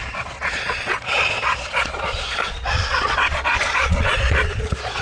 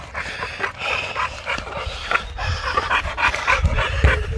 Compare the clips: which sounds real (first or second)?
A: second